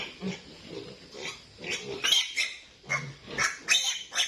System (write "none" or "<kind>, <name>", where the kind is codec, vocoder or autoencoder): none